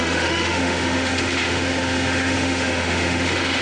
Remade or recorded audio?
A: remade